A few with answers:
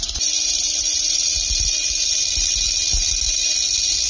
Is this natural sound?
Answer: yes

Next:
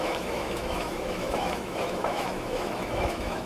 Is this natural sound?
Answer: no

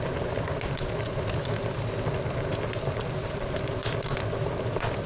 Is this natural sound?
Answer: yes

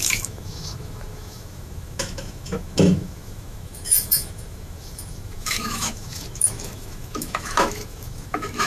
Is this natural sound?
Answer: no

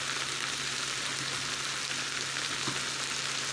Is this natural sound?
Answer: yes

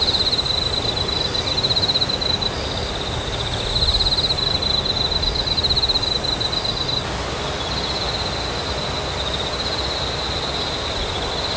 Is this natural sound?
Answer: yes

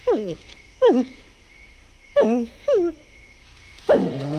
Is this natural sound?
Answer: no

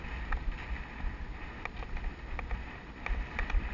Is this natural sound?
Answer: yes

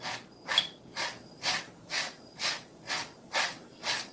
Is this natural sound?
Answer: yes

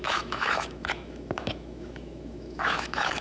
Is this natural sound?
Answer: no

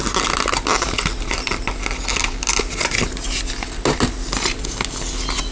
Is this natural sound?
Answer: yes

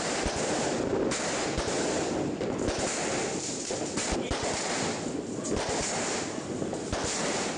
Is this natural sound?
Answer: yes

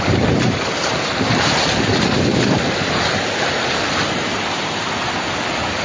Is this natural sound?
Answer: yes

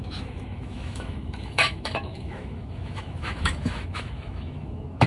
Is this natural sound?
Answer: no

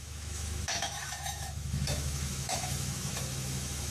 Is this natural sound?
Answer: no